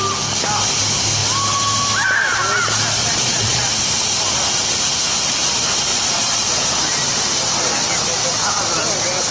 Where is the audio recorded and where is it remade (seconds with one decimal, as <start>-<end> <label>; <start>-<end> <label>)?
0.0-3.0 recorded; 3.0-3.7 remade; 3.7-5.9 recorded; 5.9-6.8 remade; 6.8-9.3 recorded